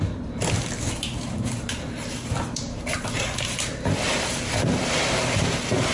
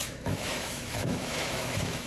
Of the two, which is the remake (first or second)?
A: second